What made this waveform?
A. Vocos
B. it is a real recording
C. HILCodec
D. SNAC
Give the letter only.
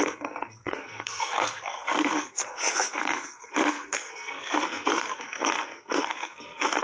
D